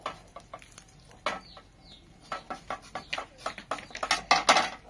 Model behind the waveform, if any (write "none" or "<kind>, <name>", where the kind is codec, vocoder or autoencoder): none